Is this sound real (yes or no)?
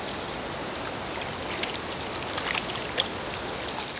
yes